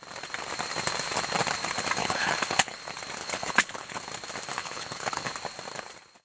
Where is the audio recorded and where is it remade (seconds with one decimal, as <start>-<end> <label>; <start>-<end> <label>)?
0.0-2.0 recorded; 2.0-2.8 remade; 2.8-3.2 recorded; 3.2-4.0 remade; 4.0-4.6 recorded; 4.6-5.3 remade; 5.3-6.2 recorded